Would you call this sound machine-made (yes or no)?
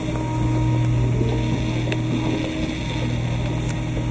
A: no